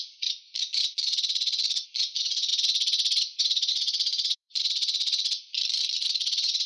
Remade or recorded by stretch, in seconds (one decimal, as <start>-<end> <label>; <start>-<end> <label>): 0.0-2.5 remade; 2.5-3.7 recorded; 3.7-6.7 remade

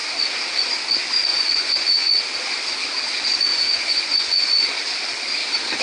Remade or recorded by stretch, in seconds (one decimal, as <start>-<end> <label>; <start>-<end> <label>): 0.0-1.3 recorded; 1.3-2.2 remade; 2.2-3.5 recorded; 3.5-4.8 remade; 4.8-5.8 recorded

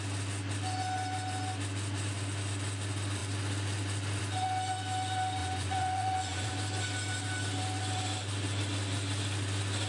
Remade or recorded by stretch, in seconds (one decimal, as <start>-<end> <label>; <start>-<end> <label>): 0.0-5.4 recorded; 5.4-6.5 remade; 6.5-9.9 recorded